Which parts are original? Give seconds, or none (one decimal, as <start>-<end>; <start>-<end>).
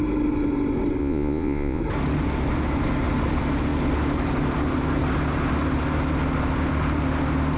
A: 0.0-1.0; 1.8-7.6